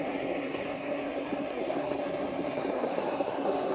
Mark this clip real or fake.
fake